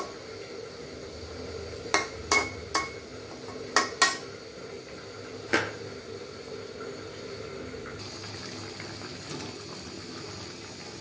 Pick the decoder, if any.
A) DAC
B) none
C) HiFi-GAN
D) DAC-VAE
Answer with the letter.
B